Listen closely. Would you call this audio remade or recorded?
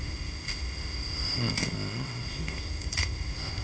remade